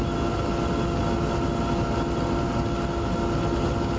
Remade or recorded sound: recorded